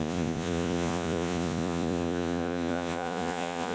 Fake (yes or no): yes